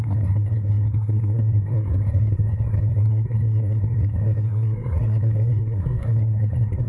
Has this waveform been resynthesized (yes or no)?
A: yes